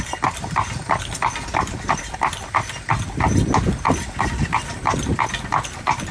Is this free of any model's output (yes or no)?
yes